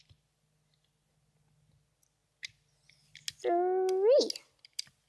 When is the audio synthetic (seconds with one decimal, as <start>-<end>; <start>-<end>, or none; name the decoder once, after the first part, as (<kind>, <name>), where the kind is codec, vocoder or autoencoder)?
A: none